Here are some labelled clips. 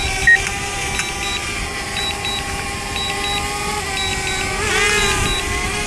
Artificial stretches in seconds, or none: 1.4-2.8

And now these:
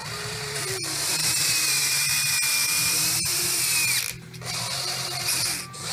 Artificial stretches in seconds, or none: 0.0-0.6; 1.1-3.9

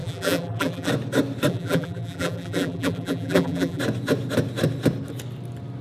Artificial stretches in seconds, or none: 0.0-0.9; 1.5-3.8

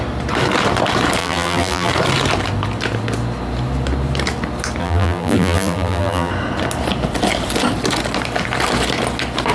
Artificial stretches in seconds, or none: 1.2-1.9; 4.8-6.3

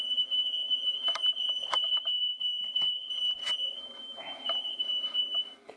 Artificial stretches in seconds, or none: 0.0-5.8

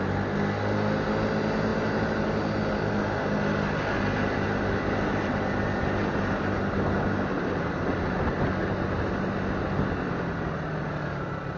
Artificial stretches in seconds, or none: none